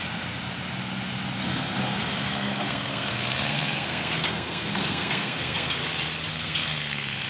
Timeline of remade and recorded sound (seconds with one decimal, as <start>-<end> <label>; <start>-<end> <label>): 0.0-1.5 recorded; 1.5-5.8 remade; 5.8-6.3 recorded; 6.3-7.3 remade